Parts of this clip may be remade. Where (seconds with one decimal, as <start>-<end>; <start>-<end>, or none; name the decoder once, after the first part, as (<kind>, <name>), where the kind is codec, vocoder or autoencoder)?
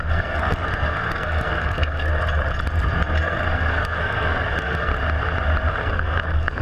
0.0-2.1 (codec, SNAC); 3.2-4.9; 5.7-6.6